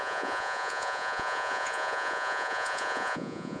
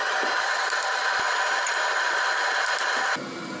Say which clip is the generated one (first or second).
first